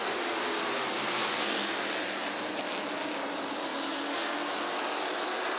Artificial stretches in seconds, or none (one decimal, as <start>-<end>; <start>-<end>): 1.3-1.8